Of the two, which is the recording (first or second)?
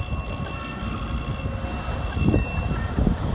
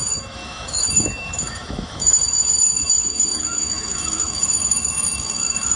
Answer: first